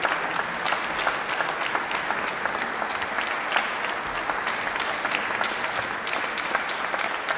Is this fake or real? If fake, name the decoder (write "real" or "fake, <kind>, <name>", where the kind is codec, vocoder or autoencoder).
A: real